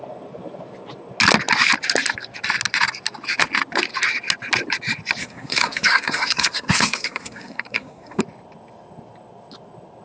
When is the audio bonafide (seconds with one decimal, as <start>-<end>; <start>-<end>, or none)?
0.0-5.2; 8.2-10.0